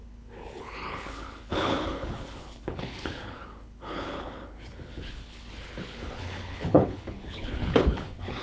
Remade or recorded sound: remade